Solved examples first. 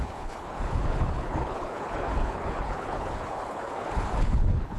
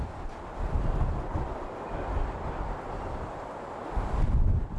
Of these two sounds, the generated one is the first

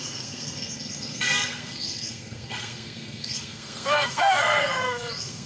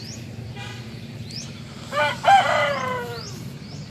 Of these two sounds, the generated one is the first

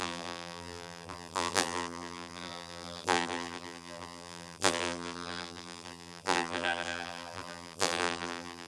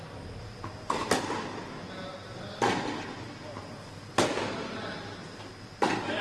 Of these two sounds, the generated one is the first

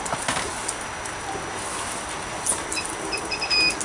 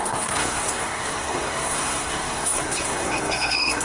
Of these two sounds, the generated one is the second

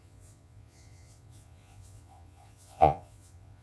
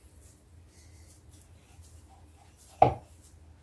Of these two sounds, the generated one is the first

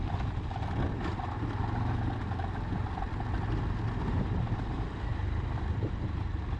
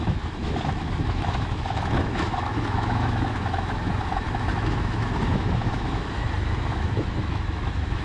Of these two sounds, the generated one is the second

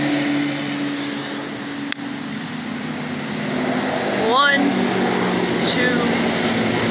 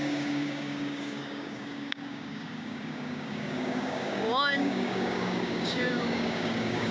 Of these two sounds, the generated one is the second